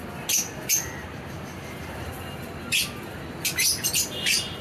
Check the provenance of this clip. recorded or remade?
remade